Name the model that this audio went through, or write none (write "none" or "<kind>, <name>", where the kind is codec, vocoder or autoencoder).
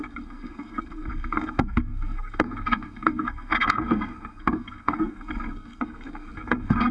codec, SNAC